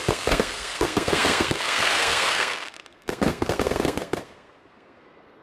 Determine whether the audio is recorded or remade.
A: remade